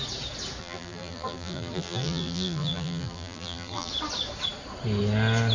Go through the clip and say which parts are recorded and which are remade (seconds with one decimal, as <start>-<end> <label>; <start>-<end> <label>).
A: 0.0-0.6 recorded; 0.6-3.9 remade; 3.9-5.5 recorded